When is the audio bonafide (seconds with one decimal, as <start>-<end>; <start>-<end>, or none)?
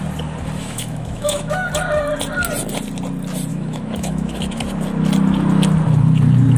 0.0-0.6; 1.7-3.5; 4.6-6.6